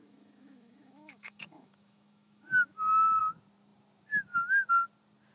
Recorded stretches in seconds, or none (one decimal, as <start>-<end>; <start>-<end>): 3.2-5.3

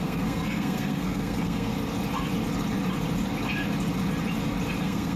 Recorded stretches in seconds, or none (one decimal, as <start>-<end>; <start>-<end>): 1.7-4.8

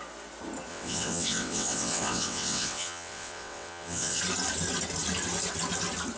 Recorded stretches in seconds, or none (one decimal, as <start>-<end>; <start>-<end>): 0.0-0.7; 4.2-6.2

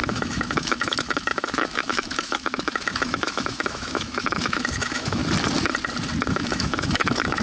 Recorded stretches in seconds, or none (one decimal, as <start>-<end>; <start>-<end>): 5.2-6.3

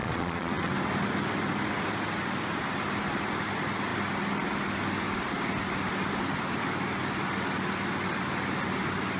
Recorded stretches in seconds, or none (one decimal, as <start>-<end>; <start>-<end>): 0.7-9.2